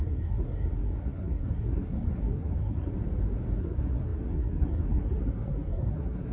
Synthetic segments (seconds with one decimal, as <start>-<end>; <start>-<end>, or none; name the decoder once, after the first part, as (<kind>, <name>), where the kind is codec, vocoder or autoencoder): 0.0-2.9 (codec, SNAC); 3.6-6.3